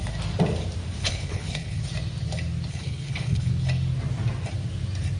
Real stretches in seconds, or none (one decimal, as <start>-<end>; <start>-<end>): 0.0-1.0; 1.8-2.7; 3.5-5.2